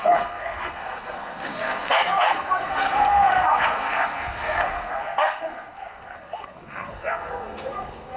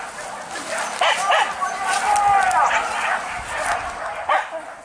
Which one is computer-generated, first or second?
first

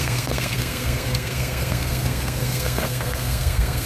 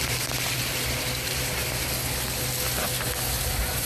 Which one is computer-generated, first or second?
first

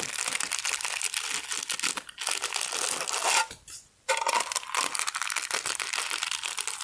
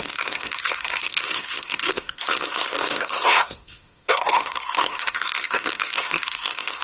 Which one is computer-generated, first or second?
second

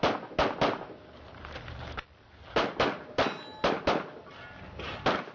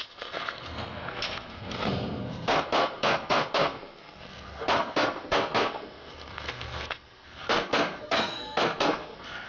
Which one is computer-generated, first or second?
second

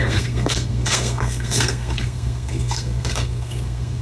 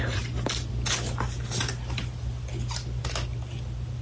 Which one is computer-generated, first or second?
first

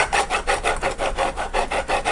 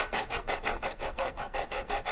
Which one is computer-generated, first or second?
second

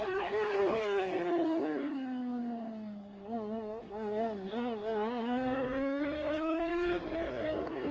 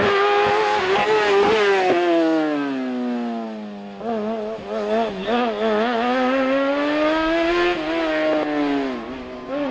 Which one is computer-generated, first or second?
first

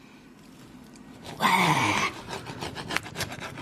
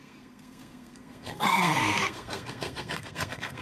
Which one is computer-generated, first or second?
second